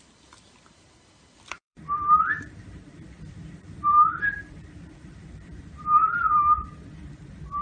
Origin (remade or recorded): remade